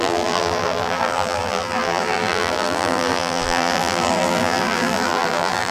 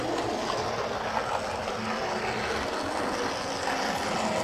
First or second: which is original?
second